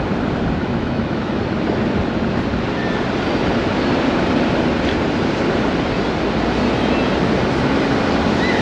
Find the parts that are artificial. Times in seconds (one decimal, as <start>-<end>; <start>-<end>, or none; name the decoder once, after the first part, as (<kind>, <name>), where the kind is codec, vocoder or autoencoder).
0.6-1.4 (autoencoder, DAC-VAE)